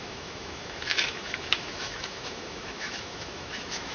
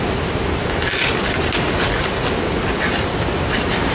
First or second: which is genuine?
second